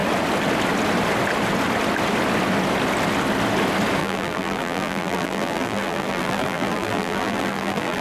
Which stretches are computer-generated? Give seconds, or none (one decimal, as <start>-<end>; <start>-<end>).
4.0-8.0